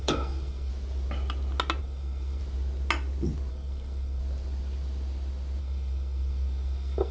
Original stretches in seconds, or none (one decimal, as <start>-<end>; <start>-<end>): 0.7-1.8; 2.4-3.5; 4.2-5.6